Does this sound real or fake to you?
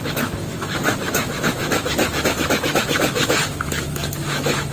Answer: fake